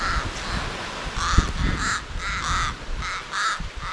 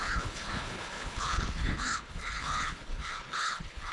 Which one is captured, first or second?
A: first